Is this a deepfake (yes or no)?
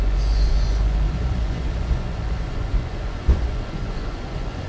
yes